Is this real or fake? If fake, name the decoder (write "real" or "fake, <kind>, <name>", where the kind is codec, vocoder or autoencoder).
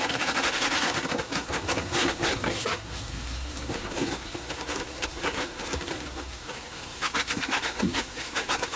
fake, codec, SNAC